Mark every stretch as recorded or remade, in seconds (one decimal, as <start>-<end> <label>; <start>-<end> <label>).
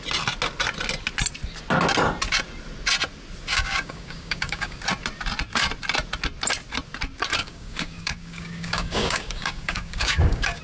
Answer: 0.0-3.5 recorded; 3.5-4.8 remade; 4.8-7.4 recorded; 7.4-10.6 remade